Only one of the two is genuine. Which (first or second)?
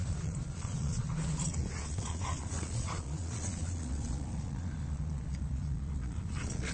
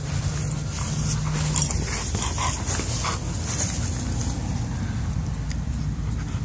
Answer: second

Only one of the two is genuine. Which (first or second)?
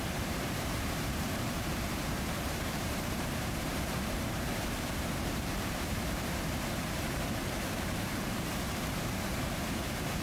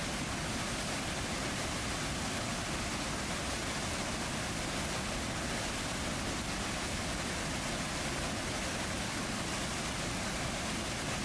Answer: second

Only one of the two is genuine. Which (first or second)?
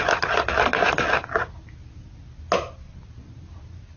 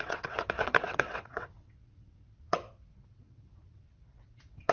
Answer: first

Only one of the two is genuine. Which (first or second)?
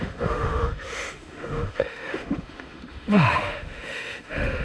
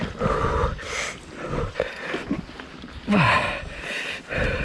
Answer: second